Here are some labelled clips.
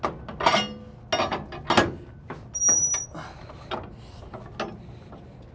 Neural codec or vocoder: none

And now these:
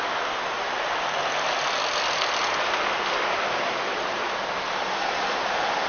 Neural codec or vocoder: none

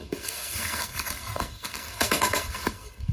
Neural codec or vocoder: codec, SNAC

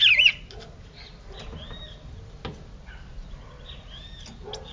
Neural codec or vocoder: none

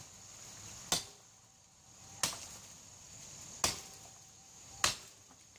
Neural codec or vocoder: none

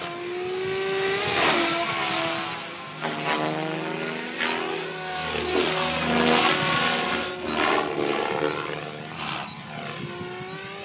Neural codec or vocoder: none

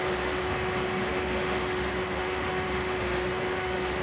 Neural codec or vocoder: autoencoder, DAC-VAE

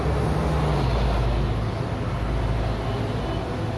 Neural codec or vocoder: none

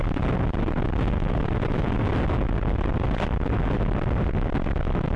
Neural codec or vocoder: none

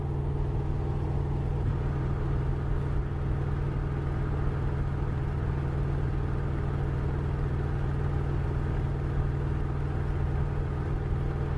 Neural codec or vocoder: none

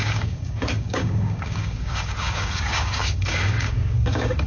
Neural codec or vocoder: codec, DAC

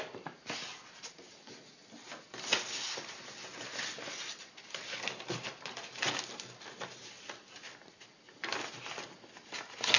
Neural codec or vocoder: none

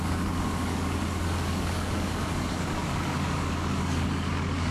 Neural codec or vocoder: codec, DAC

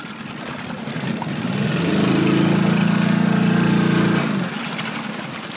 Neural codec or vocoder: none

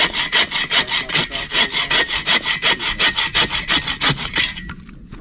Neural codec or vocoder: none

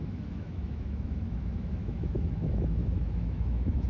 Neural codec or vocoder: autoencoder, DAC-VAE